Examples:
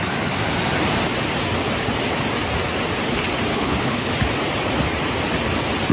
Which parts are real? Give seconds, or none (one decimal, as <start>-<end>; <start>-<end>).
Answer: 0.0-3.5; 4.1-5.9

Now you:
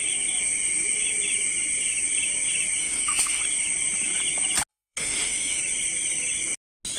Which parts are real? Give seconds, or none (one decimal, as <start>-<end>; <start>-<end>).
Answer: 0.0-2.8; 3.4-4.7; 5.6-7.0

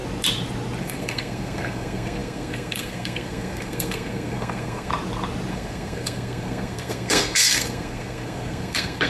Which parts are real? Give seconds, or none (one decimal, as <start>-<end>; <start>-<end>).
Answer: 0.0-0.8; 4.9-5.5